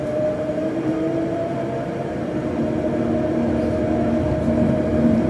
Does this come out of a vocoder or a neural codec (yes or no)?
yes